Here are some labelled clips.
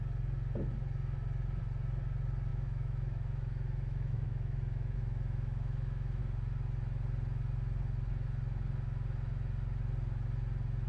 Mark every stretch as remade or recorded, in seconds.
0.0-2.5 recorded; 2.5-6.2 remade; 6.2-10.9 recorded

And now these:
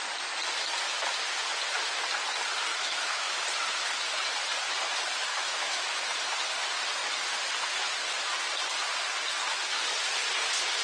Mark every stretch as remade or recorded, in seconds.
0.0-2.7 recorded; 2.7-3.3 remade; 3.3-5.3 recorded; 5.3-6.0 remade; 6.0-10.8 recorded

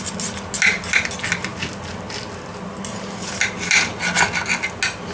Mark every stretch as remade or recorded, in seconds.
0.0-5.1 recorded

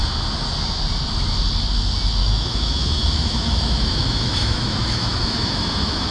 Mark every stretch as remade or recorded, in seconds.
0.0-2.2 recorded; 2.2-6.1 remade

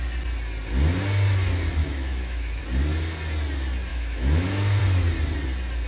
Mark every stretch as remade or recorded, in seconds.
0.0-1.8 recorded; 1.8-2.6 remade; 2.6-3.9 recorded; 3.9-4.8 remade; 4.8-5.9 recorded

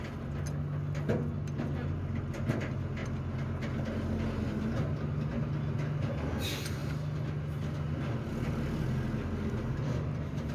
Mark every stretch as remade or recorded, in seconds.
0.0-10.5 recorded

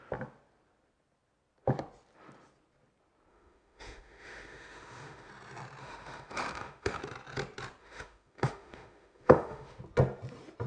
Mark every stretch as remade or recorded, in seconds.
0.0-3.3 recorded; 3.3-5.3 remade; 5.3-5.8 recorded; 5.8-7.0 remade; 7.0-7.8 recorded; 7.8-9.8 remade; 9.8-10.7 recorded